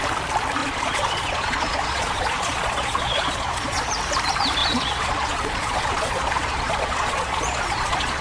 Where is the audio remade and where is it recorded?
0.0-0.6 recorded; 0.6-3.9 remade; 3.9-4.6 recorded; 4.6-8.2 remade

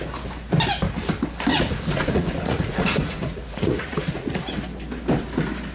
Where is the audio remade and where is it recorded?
0.0-1.5 recorded; 1.5-4.4 remade; 4.4-5.7 recorded